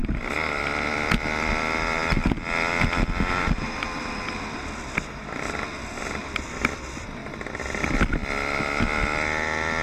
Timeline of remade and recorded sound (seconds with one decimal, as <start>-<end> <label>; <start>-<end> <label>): 0.0-9.8 recorded